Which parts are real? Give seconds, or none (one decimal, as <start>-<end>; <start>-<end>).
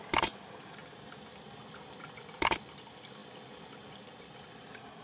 0.0-5.0